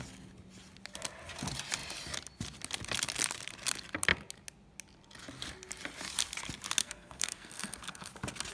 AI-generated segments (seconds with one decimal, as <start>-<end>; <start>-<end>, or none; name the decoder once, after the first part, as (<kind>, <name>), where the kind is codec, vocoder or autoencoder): 6.8-8.1 (codec, SNAC)